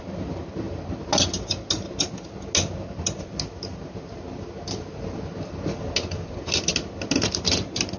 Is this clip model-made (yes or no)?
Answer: no